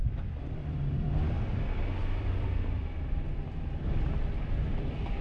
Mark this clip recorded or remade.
remade